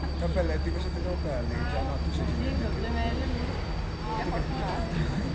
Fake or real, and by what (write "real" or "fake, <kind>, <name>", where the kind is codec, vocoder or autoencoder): real